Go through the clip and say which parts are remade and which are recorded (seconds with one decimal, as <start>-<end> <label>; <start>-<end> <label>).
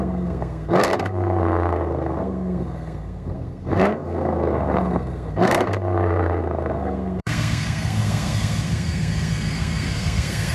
0.0-10.5 remade